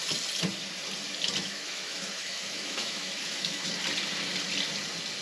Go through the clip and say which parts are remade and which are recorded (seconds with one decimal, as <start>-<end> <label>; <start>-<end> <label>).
0.0-1.4 recorded; 1.4-3.7 remade; 3.7-5.2 recorded

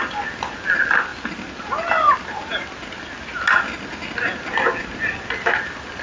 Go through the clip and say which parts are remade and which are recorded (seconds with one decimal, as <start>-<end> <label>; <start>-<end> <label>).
0.0-6.0 recorded

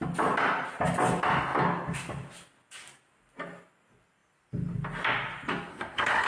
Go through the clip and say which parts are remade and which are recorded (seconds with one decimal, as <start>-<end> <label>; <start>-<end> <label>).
0.0-5.7 recorded; 5.7-6.3 remade

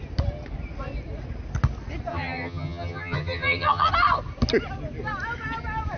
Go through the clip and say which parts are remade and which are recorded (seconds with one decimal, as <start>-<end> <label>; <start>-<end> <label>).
0.0-2.1 recorded; 2.1-3.9 remade; 3.9-6.0 recorded

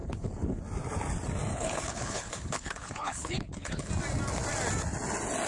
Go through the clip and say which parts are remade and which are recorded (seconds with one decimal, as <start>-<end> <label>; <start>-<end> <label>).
0.0-0.6 remade; 0.6-1.5 recorded; 1.5-3.9 remade; 3.9-5.5 recorded

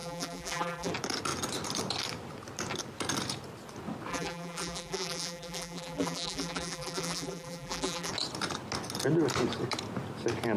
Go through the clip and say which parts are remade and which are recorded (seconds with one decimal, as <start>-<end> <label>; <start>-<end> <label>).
0.0-0.9 remade; 0.9-4.1 recorded; 4.1-8.1 remade; 8.1-10.6 recorded